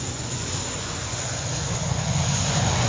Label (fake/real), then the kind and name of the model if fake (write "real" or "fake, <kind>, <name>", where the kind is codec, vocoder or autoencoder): fake, vocoder, Vocos